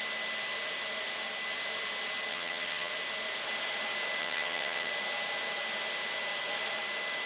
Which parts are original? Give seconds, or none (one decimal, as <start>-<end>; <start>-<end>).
0.0-2.3; 2.9-4.2; 4.9-7.3